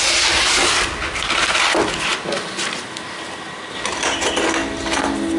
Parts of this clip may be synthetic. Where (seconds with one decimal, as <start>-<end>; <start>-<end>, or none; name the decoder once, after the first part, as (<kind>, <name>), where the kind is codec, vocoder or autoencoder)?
none